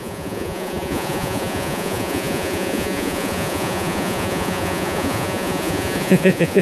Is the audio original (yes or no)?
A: no